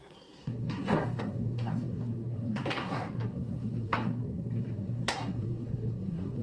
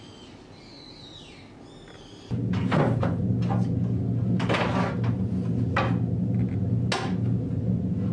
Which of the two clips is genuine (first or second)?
second